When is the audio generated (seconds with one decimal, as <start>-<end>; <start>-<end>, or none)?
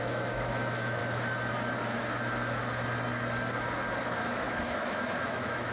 0.0-1.0; 4.0-5.7